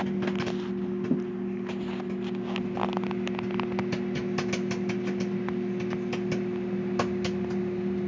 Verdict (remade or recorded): recorded